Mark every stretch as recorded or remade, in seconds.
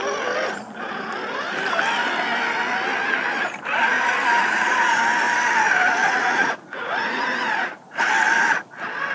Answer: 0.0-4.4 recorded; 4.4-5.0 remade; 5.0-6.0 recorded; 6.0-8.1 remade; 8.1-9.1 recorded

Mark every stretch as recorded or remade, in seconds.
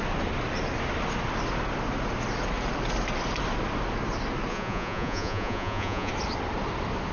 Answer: 0.0-4.5 recorded; 4.5-6.1 remade; 6.1-7.1 recorded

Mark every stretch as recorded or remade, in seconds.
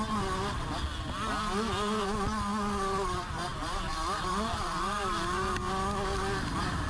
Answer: 0.0-6.9 recorded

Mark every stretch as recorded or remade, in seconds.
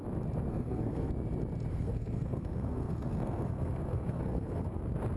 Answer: 0.0-0.5 recorded; 0.5-1.1 remade; 1.1-1.7 recorded; 1.7-4.8 remade; 4.8-5.2 recorded